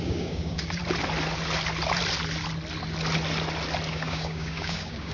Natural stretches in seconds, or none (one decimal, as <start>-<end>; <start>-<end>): 0.8-3.9